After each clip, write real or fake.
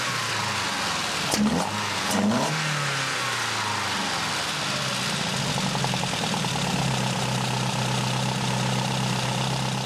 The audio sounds real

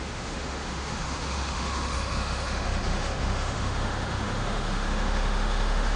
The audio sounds fake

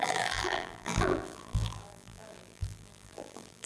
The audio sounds fake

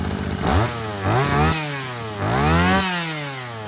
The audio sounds real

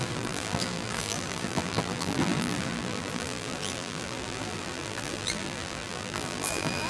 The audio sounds fake